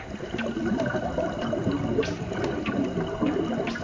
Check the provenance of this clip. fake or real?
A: real